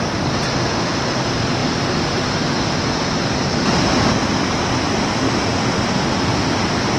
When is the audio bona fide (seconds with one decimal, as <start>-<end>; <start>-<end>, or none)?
0.0-1.6; 2.9-7.0